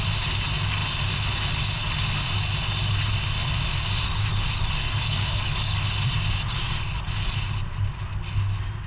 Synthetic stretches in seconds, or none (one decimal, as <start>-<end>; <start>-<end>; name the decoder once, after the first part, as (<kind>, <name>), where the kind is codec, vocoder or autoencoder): 4.8-5.8 (codec, DAC)